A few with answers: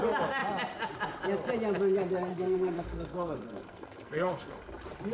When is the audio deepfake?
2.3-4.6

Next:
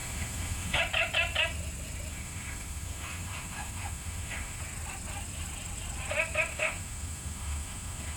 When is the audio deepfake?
0.0-0.8; 2.1-4.6; 6.5-8.2